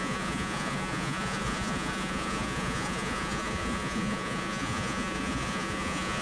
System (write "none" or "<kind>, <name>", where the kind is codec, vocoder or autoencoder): vocoder, Vocos